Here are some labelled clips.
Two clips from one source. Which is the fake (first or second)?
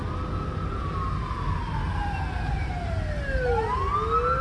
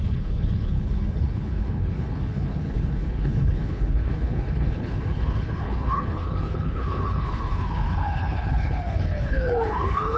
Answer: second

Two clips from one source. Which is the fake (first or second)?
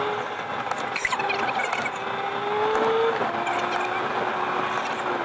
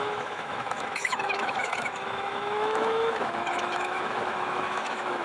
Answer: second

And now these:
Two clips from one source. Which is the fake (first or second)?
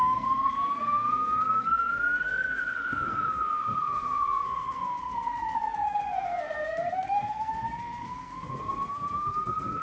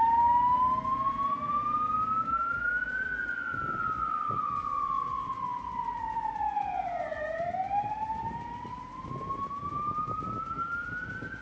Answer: first